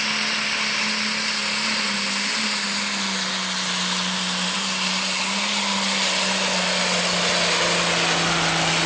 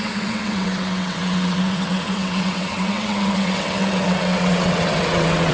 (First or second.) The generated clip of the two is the second